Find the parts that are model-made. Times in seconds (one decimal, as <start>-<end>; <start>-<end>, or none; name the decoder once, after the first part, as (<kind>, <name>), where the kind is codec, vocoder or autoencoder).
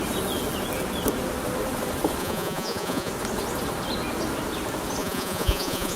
2.2-3.1 (vocoder, Vocos); 5.0-6.0